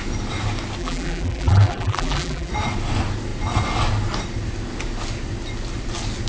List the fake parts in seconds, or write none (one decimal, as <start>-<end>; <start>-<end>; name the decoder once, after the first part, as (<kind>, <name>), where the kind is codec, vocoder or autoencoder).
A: 0.8-2.5 (vocoder, BigVGAN v2)